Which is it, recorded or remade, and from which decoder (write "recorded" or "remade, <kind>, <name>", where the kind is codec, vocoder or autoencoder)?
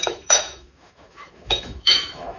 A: remade, autoencoder, DAC-VAE